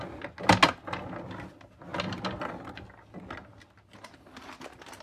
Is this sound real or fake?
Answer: real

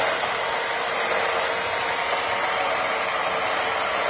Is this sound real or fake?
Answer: real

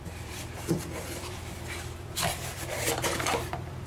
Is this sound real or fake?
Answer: fake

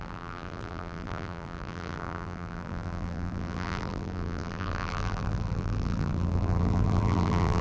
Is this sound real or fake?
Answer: fake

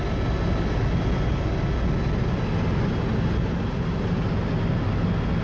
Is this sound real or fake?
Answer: real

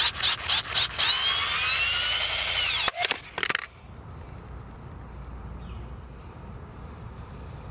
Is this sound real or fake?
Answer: real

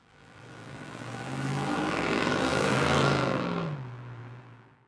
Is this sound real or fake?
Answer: fake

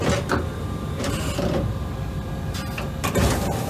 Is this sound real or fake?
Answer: fake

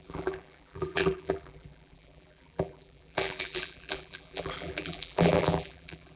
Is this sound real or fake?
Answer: fake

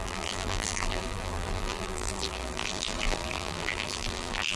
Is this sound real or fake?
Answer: fake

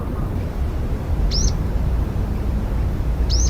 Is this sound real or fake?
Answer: fake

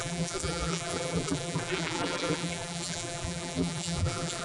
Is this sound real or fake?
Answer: fake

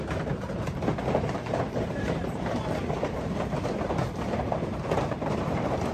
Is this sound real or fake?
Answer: fake